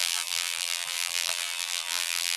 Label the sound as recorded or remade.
remade